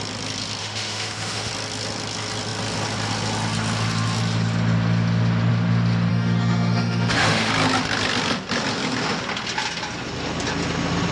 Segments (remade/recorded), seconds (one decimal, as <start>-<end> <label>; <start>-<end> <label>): 0.0-0.6 recorded; 0.6-1.5 remade; 1.5-6.1 recorded; 6.1-7.5 remade; 7.5-11.1 recorded